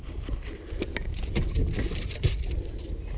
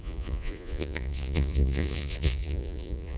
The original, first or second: first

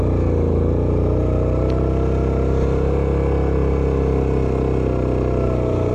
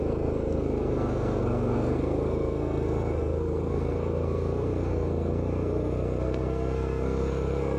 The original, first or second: first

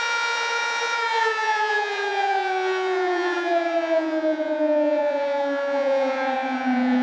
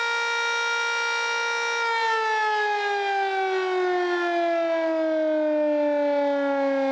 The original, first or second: second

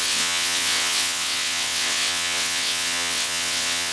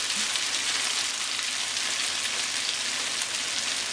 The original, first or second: second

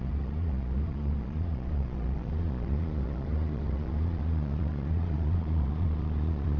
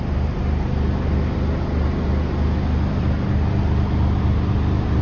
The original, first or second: second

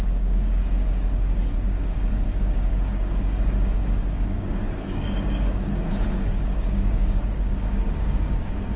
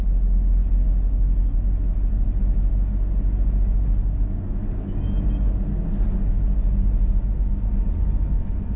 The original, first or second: second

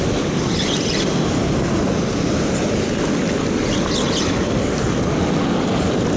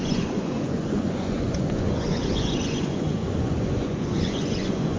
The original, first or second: first